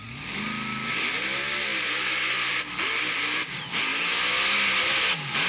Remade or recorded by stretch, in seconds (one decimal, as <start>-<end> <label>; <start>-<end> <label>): 0.0-5.5 recorded